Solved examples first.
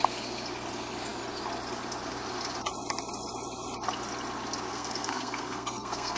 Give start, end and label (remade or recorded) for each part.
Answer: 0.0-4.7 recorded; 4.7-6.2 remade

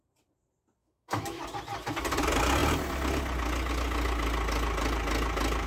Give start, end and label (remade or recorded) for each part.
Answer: 0.0-0.8 recorded; 0.8-1.4 remade; 1.4-5.7 recorded

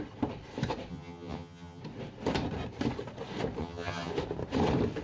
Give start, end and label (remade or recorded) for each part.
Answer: 0.0-0.9 recorded; 0.9-1.8 remade; 1.8-3.6 recorded; 3.6-4.1 remade; 4.1-5.0 recorded

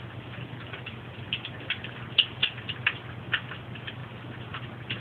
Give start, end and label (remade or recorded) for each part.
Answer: 0.0-2.4 recorded; 2.4-3.1 remade; 3.1-4.0 recorded; 4.0-4.6 remade; 4.6-5.0 recorded

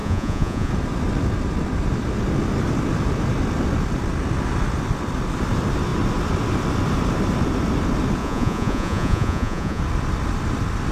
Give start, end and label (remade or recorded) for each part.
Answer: 0.0-0.7 remade; 0.7-8.2 recorded; 8.2-9.8 remade; 9.8-10.9 recorded

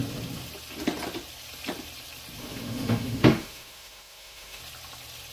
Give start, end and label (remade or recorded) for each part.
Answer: 0.0-2.4 recorded; 2.4-4.6 remade; 4.6-5.3 recorded